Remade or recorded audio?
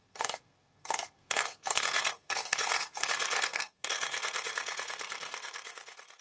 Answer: remade